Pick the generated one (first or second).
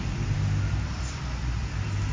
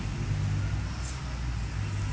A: first